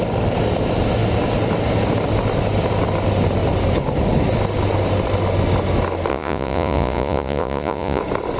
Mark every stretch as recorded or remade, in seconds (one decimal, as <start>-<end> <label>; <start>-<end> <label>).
0.0-6.1 recorded; 6.1-8.0 remade; 8.0-8.4 recorded